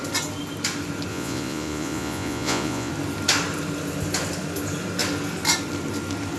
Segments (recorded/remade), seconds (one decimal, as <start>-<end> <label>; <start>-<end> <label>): 0.0-1.1 recorded; 1.1-2.9 remade; 2.9-6.4 recorded